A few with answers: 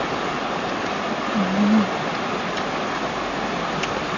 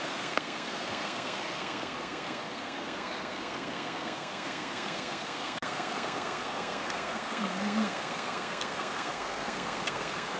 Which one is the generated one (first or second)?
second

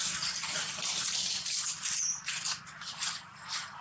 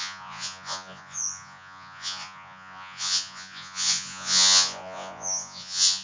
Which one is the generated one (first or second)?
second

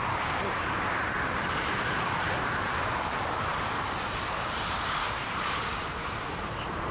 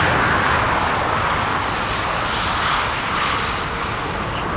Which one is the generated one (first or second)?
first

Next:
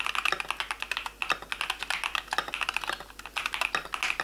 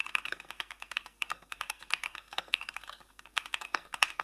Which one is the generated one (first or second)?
second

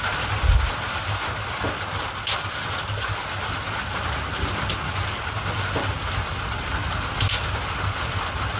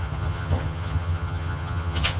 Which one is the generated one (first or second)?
second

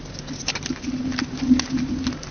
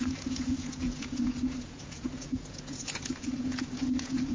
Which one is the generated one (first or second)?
second